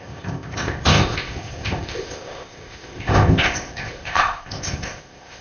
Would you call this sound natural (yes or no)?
no